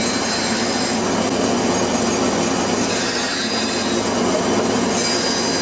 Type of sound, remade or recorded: recorded